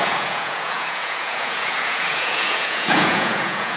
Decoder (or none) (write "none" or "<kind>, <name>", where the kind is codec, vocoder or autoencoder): vocoder, Vocos